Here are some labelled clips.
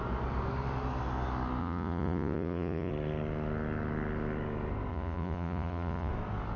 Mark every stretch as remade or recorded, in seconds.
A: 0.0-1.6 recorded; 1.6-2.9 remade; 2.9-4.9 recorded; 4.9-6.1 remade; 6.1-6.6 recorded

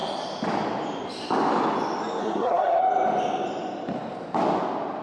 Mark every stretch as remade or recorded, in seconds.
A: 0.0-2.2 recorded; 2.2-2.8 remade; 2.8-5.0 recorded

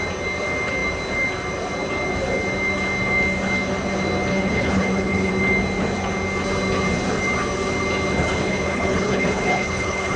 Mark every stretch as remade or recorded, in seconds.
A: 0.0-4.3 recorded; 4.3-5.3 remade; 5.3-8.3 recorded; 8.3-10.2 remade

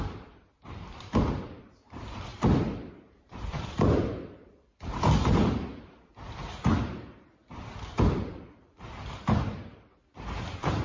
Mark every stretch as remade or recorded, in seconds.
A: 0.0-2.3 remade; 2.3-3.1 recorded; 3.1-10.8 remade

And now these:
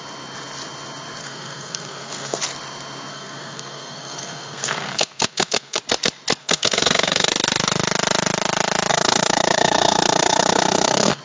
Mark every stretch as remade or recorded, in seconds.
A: 0.0-1.2 recorded; 1.2-2.4 remade; 2.4-3.1 recorded; 3.1-5.8 remade; 5.8-6.4 recorded; 6.4-7.3 remade; 7.3-8.9 recorded; 8.9-11.2 remade

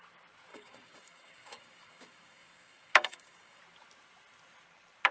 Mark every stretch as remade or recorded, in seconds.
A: 0.0-0.5 recorded; 0.5-3.6 remade; 3.6-5.1 recorded

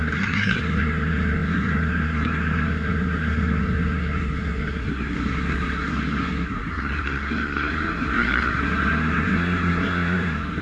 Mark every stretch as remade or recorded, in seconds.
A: 0.0-10.6 remade

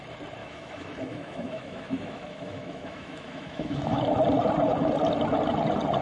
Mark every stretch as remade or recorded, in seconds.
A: 0.0-0.4 recorded; 0.4-4.0 remade; 4.0-6.0 recorded